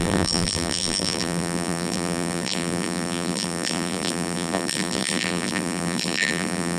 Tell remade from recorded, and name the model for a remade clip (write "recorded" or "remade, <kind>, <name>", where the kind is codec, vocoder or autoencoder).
remade, vocoder, BigVGAN v2